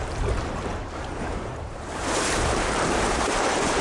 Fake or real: fake